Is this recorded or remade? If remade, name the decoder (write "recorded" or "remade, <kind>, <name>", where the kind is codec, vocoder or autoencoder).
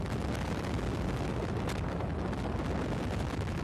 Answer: recorded